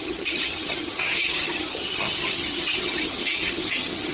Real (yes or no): no